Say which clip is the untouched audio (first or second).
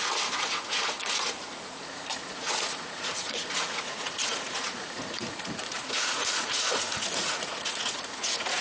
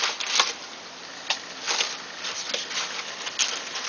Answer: second